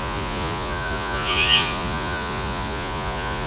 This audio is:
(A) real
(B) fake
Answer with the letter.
B